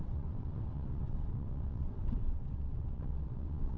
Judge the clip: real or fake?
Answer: fake